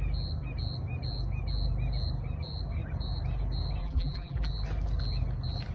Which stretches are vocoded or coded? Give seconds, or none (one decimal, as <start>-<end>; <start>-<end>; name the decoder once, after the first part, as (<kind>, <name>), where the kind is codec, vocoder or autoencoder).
3.8-4.5 (vocoder, BigVGAN v2)

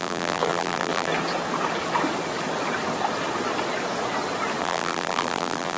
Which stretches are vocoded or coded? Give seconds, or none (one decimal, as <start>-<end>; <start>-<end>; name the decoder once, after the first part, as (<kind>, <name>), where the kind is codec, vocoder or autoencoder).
0.0-1.1 (vocoder, BigVGAN v2); 4.6-5.8

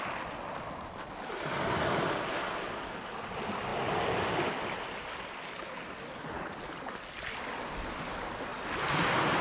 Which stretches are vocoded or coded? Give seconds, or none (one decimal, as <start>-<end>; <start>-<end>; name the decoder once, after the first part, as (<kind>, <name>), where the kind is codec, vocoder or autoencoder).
none

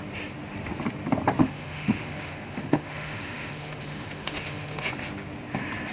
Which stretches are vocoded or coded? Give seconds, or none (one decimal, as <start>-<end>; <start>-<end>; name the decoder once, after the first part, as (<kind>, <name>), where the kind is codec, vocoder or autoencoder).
1.4-4.9 (autoencoder, DAC-VAE)

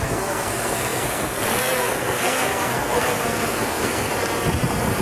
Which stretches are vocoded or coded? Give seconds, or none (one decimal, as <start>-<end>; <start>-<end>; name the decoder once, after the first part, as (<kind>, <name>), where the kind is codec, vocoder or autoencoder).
0.0-4.1 (codec, SNAC)

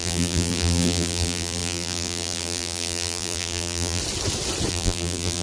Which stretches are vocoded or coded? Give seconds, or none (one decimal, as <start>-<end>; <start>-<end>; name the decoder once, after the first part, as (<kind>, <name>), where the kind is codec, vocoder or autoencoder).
0.0-4.0 (vocoder, BigVGAN v2); 4.7-5.4